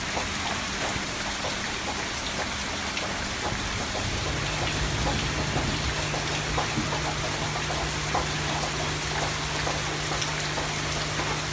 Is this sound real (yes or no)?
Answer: yes